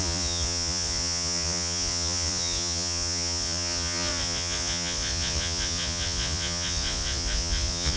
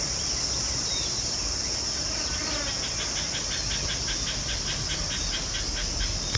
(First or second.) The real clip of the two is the second